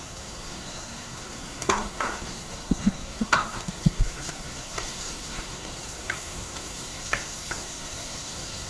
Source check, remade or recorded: remade